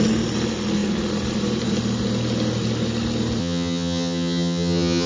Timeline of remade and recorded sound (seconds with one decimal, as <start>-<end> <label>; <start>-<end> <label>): 0.0-3.4 recorded; 3.4-5.1 remade